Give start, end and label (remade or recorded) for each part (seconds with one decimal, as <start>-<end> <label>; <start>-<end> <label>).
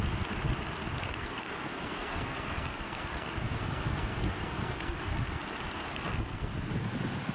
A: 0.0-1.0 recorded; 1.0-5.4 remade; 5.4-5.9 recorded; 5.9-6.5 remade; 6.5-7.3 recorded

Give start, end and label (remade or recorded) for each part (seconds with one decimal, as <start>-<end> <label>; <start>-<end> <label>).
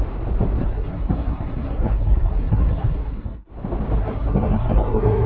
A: 0.0-0.6 recorded; 0.6-3.5 remade; 3.5-4.0 recorded; 4.0-5.3 remade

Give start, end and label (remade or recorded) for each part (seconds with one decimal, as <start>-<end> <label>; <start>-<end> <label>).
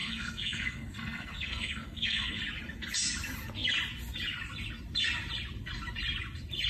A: 0.0-2.4 remade; 2.4-6.7 recorded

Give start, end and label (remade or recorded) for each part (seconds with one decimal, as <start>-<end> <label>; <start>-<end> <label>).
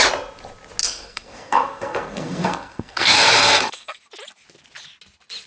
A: 0.0-0.8 recorded; 0.8-4.0 remade; 4.0-5.5 recorded